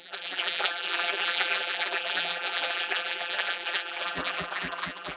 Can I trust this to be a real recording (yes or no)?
no